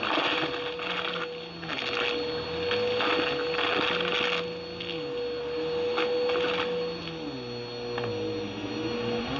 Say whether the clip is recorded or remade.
recorded